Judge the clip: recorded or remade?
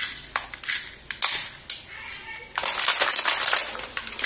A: recorded